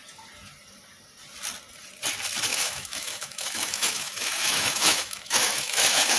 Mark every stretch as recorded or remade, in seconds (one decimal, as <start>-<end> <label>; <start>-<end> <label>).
0.0-2.5 recorded; 2.5-6.2 remade

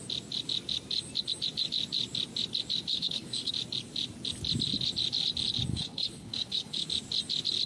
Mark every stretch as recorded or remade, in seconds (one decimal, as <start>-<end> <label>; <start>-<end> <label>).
0.0-2.9 recorded; 2.9-3.5 remade; 3.5-5.7 recorded; 5.7-6.9 remade; 6.9-7.7 recorded

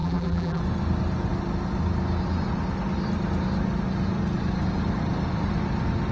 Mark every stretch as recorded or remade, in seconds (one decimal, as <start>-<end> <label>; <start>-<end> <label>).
0.0-0.6 remade; 0.6-6.1 recorded

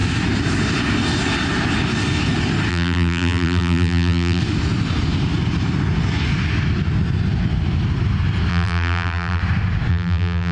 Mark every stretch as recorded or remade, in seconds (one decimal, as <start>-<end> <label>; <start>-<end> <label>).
0.0-2.7 recorded; 2.7-4.4 remade; 4.4-8.5 recorded; 8.5-9.4 remade; 9.4-9.9 recorded; 9.9-10.5 remade

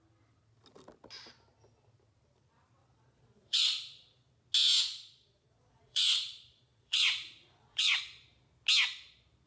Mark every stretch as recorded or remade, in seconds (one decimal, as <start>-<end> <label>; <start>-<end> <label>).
0.0-2.8 recorded; 2.8-4.3 remade; 4.3-4.9 recorded; 4.9-8.0 remade; 8.0-9.5 recorded

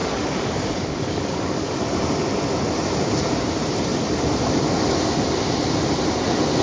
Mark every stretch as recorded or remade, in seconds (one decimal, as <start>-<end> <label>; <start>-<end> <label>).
0.0-1.8 remade; 1.8-6.6 recorded

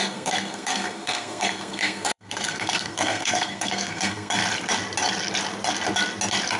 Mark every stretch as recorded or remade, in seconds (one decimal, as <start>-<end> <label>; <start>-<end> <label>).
0.0-4.4 remade; 4.4-6.6 recorded